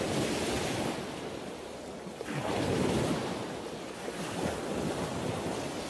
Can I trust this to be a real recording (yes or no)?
yes